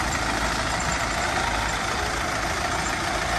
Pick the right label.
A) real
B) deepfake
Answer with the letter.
A